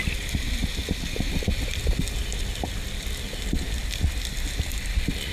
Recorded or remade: recorded